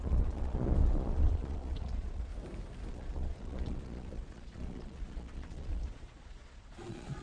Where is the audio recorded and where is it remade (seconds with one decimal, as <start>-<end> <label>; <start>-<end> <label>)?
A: 0.0-2.3 remade; 2.3-2.9 recorded; 2.9-7.2 remade